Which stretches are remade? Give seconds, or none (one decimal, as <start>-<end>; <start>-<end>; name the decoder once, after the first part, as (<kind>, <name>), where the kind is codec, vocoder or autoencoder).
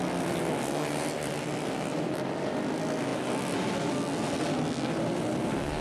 none